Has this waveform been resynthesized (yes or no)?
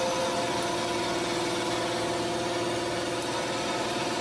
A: no